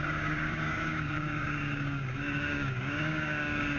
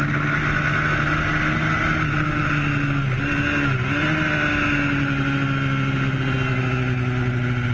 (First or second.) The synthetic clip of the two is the first